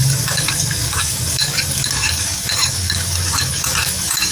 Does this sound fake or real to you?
fake